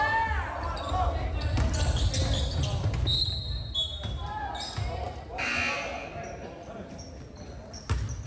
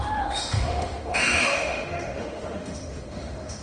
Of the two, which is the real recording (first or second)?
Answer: first